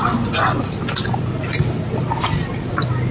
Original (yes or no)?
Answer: yes